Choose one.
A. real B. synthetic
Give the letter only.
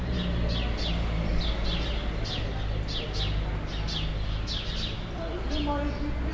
A